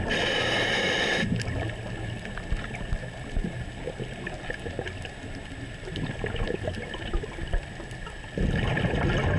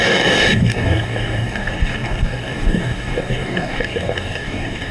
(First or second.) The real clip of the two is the first